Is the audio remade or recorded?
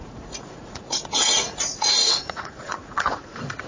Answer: remade